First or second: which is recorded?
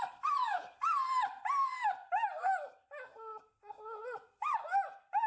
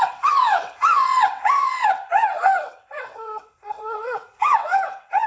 first